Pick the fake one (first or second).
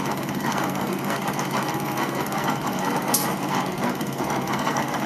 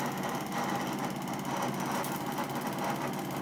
first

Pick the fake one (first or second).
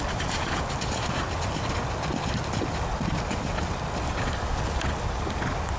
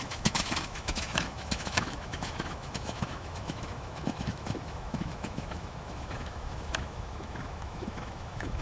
second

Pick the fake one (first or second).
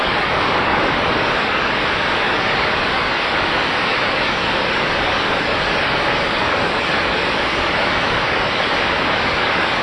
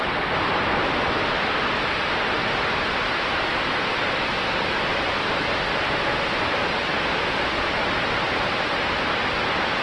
first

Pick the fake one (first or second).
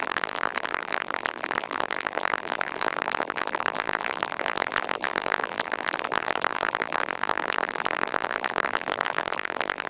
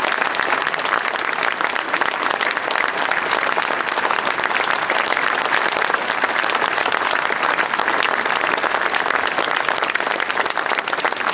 first